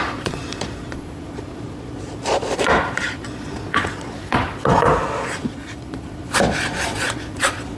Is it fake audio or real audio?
fake